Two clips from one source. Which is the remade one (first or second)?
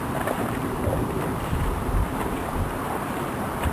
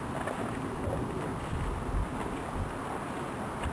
first